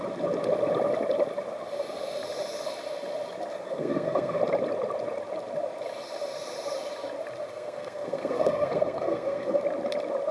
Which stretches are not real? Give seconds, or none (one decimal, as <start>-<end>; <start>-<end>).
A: 3.5-4.4; 7.5-9.6